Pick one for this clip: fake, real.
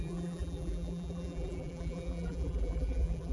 fake